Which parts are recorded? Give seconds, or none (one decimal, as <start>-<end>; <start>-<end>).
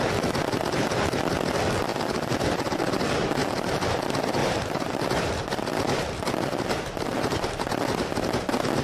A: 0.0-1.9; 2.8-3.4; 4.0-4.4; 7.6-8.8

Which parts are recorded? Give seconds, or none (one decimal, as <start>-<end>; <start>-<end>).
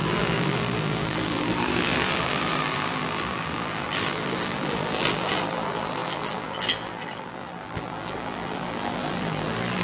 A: none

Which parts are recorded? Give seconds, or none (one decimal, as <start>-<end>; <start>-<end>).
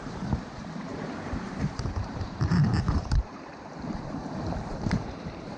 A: none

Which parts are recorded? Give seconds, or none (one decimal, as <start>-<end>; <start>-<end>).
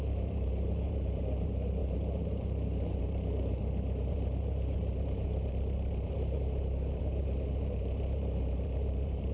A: 3.6-4.1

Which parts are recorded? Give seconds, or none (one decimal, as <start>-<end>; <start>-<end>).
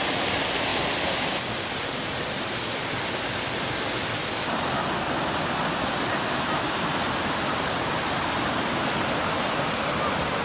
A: 0.0-0.7; 2.1-10.4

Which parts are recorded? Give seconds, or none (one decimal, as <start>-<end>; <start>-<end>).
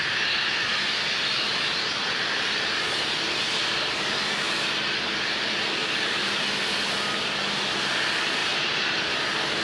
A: 0.0-8.4; 9.0-9.6